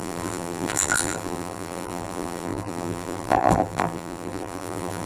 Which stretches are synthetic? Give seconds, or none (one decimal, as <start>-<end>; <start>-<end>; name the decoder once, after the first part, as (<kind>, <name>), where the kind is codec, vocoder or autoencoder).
0.0-5.1 (vocoder, BigVGAN v2)